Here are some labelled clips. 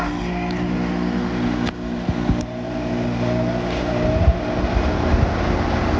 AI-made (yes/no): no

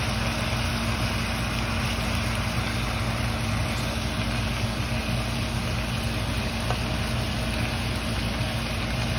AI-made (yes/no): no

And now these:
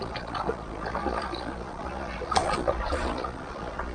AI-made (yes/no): yes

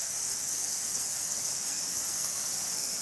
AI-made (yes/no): yes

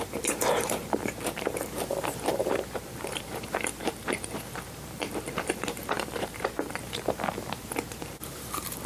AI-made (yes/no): yes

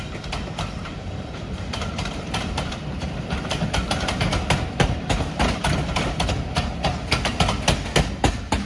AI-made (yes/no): yes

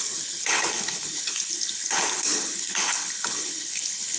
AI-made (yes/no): yes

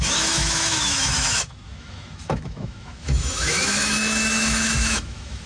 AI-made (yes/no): yes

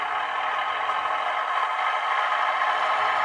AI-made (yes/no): no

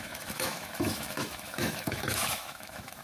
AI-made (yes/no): yes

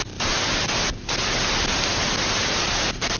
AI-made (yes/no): no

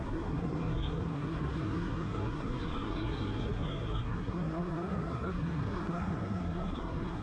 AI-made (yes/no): yes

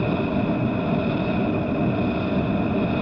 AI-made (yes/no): no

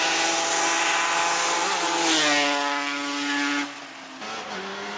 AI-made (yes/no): no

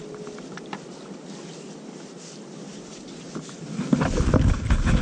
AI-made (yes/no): no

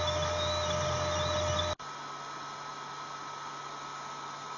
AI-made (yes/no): no